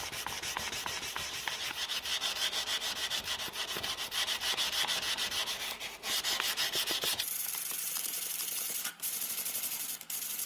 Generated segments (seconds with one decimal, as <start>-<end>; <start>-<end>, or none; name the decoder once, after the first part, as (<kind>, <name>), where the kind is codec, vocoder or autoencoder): 0.0-10.5 (vocoder, BigVGAN v2)